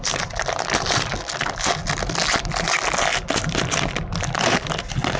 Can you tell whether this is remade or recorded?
recorded